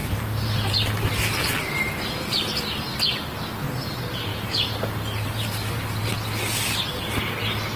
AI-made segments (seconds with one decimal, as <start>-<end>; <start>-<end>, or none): 0.0-0.9; 1.4-3.4; 4.3-6.1